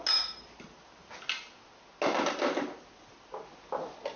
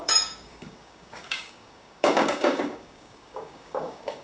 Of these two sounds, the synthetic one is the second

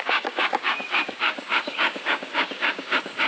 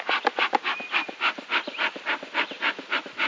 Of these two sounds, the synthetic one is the first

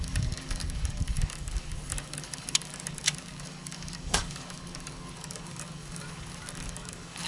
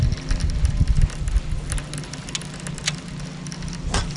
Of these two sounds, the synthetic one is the first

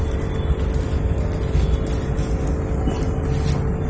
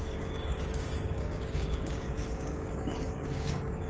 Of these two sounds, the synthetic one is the second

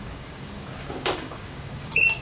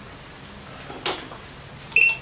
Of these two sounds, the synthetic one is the first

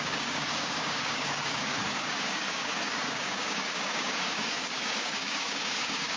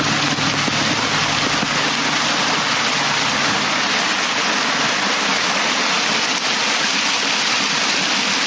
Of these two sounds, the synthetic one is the first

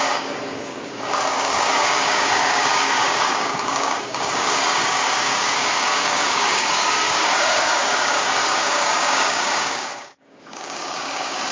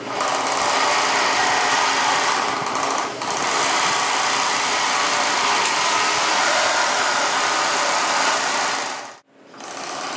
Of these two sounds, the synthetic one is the first